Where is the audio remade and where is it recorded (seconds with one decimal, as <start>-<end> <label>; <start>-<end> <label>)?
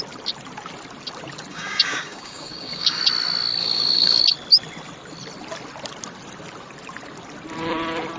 0.0-1.5 recorded; 1.5-3.0 remade; 3.0-3.6 recorded; 3.6-4.2 remade; 4.2-8.2 recorded